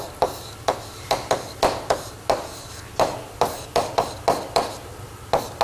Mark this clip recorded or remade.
recorded